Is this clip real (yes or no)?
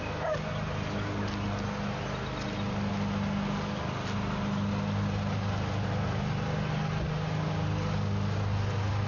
yes